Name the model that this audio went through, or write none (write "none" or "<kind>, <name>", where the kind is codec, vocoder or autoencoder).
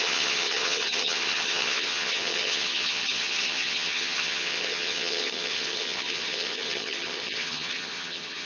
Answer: vocoder, HiFi-GAN